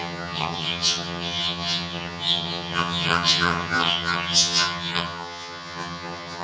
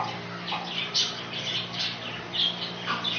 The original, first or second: second